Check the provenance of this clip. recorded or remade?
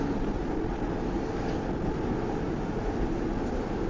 recorded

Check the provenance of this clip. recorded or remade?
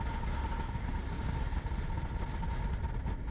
recorded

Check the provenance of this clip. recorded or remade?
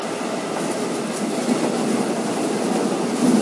recorded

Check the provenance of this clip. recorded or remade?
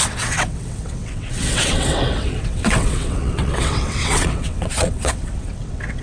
remade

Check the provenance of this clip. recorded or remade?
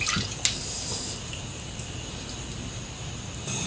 recorded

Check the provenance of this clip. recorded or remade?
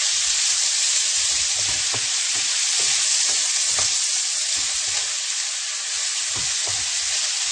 recorded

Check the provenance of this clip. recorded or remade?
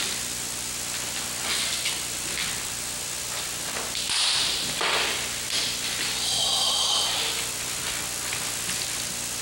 recorded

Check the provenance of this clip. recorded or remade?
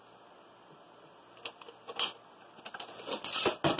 recorded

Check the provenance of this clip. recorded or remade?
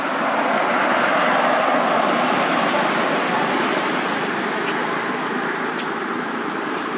remade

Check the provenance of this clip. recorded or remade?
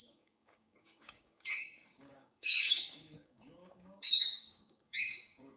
remade